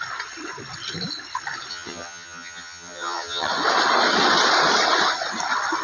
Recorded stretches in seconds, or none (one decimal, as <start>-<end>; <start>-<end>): 0.0-1.7; 3.5-5.8